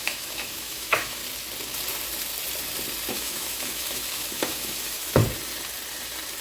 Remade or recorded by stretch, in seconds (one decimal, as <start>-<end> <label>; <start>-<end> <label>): 0.0-1.2 remade; 1.2-3.1 recorded; 3.1-5.2 remade; 5.2-6.4 recorded

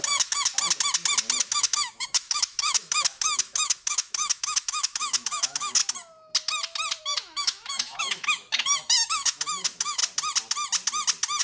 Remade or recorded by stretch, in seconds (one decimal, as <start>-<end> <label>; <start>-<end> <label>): 0.0-0.5 remade; 0.5-1.4 recorded; 1.4-5.8 remade; 5.8-7.0 recorded; 7.0-10.0 remade; 10.0-11.4 recorded

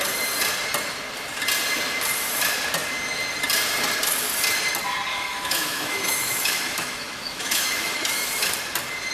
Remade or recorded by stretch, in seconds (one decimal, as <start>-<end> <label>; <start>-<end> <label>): 0.0-5.1 recorded; 5.1-8.3 remade; 8.3-9.1 recorded

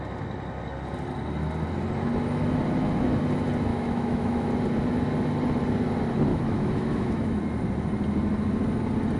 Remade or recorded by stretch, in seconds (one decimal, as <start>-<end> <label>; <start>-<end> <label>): 0.0-3.7 recorded; 3.7-4.5 remade; 4.5-6.3 recorded; 6.3-7.4 remade; 7.4-9.2 recorded

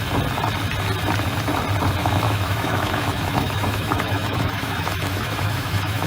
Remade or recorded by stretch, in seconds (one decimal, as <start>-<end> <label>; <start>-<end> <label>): 0.0-2.0 recorded; 2.0-6.1 remade